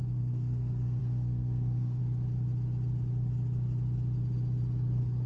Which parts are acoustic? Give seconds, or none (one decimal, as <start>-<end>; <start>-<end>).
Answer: 2.0-5.3